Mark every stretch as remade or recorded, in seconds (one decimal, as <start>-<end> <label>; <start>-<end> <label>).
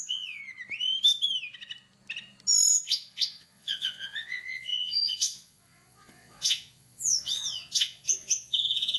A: 0.0-0.4 remade; 0.4-2.7 recorded; 2.7-9.0 remade